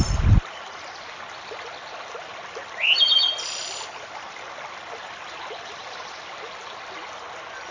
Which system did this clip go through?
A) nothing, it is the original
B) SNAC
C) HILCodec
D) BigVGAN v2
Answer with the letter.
A